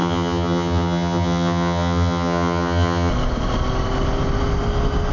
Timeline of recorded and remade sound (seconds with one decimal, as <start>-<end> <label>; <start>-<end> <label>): 0.0-3.1 remade; 3.1-5.1 recorded